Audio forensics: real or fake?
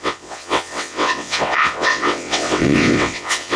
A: fake